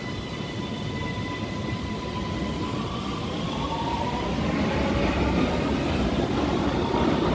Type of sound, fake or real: real